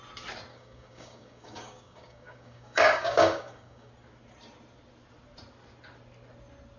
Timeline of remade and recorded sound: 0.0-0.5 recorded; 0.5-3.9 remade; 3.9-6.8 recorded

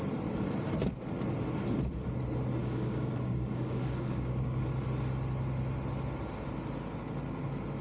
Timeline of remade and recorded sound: 0.0-2.6 recorded; 2.6-4.6 remade; 4.6-7.8 recorded

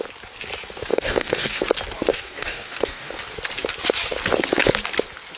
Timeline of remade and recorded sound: 0.0-0.9 recorded; 0.9-1.6 remade; 1.6-2.1 recorded; 2.1-3.1 remade; 3.1-5.4 recorded

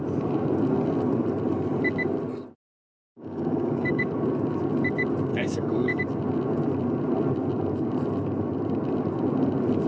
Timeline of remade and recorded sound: 0.0-2.8 recorded; 2.8-4.0 remade; 4.0-5.3 recorded; 5.3-6.0 remade; 6.0-9.9 recorded